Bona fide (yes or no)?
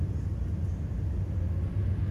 yes